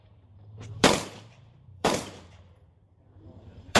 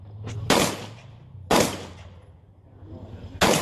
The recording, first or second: second